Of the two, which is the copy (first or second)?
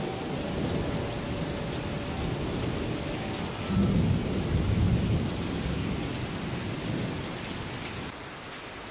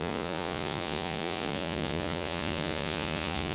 second